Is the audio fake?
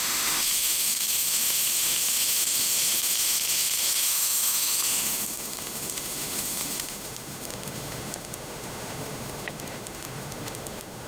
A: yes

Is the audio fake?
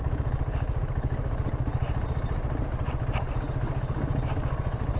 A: yes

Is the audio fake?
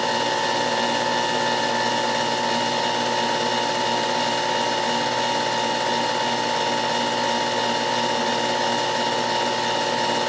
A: no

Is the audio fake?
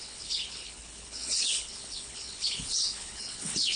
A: yes